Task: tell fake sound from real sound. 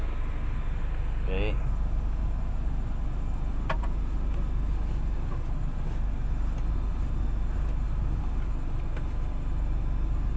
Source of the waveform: real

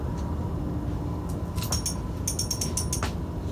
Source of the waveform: real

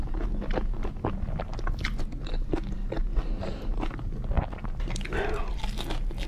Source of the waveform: real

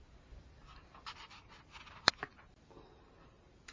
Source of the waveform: real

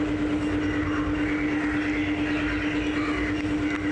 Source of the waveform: real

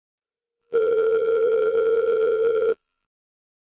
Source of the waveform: fake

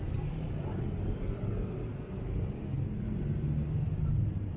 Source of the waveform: real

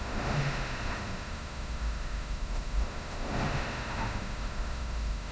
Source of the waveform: fake